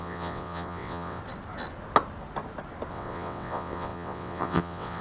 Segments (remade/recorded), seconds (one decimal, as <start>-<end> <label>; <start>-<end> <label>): 0.0-1.2 remade; 1.2-2.9 recorded; 2.9-5.0 remade